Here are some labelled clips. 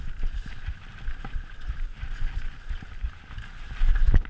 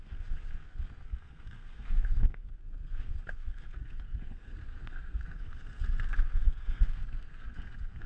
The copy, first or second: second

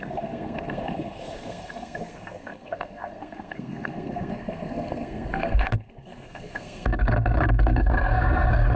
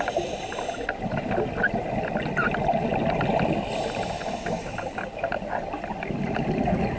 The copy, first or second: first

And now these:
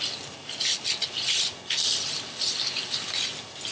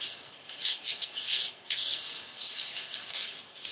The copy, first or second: second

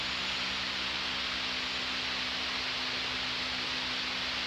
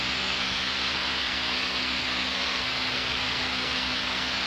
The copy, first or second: second